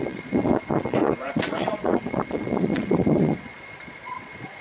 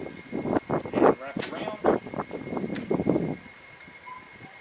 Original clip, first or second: second